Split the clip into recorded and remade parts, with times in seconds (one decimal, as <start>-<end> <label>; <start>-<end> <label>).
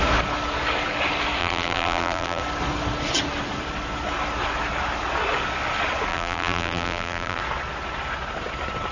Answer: 0.0-1.4 recorded; 1.4-2.4 remade; 2.4-6.1 recorded; 6.1-7.4 remade; 7.4-8.9 recorded